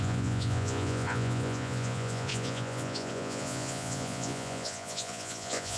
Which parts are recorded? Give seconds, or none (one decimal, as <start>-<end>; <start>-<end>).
none